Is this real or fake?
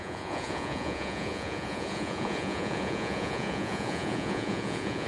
fake